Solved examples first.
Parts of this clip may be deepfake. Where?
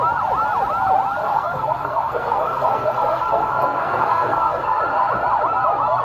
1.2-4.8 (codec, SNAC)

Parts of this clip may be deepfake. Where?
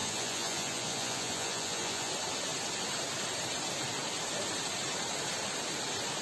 0.0-2.1 (vocoder, Vocos)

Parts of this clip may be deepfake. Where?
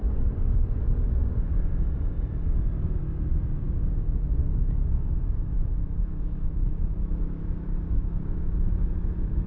4.0-4.4 (autoencoder, DAC-VAE); 5.1-9.5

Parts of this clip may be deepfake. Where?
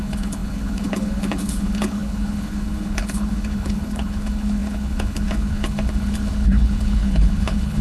0.0-7.8 (codec, HILCodec)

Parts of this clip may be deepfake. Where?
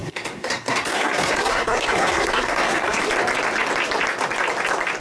0.0-3.0 (codec, SNAC)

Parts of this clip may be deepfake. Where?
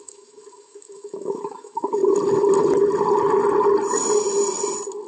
0.0-2.0 (autoencoder, DAC-VAE)